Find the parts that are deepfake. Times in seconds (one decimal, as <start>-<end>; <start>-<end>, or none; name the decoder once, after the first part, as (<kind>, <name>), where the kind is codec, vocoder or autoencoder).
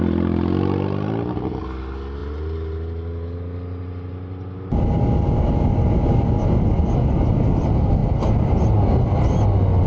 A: none